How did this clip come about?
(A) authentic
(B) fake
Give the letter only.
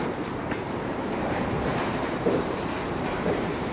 B